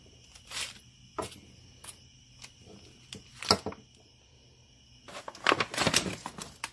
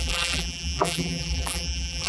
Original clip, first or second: first